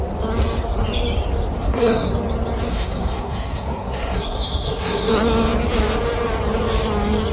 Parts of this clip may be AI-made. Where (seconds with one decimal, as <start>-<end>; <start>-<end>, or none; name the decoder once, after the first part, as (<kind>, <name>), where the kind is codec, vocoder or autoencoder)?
1.6-2.1 (codec, SNAC); 2.7-5.1